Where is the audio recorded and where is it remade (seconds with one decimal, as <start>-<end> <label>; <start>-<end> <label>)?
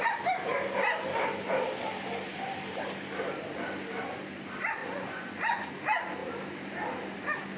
0.0-4.8 recorded; 4.8-5.7 remade; 5.7-7.6 recorded